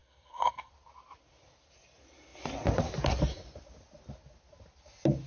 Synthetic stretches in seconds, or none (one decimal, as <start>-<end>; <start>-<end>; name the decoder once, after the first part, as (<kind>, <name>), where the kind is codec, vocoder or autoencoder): 0.0-0.7 (codec, SNAC)